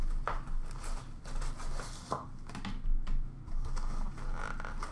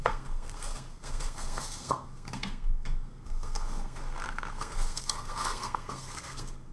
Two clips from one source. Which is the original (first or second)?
first